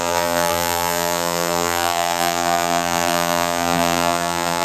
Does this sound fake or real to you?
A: fake